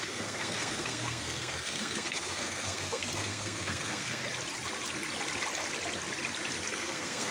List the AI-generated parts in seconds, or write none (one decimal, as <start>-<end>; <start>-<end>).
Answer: 0.0-4.2; 6.7-7.3